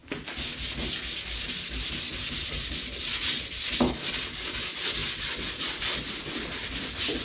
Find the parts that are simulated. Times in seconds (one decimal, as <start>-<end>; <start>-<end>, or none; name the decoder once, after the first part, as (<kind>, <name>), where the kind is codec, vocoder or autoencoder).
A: none